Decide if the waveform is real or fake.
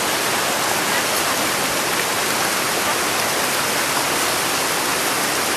real